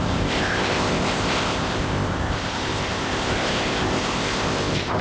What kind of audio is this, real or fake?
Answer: fake